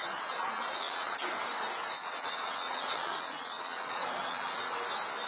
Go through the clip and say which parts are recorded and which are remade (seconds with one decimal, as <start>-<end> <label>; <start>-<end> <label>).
0.0-1.2 remade; 1.2-2.0 recorded; 2.0-4.8 remade; 4.8-5.3 recorded